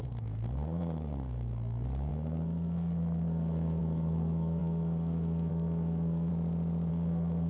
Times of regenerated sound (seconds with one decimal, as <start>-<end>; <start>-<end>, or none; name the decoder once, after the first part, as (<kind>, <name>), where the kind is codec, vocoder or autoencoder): 0.0-6.3 (codec, SNAC); 6.9-7.5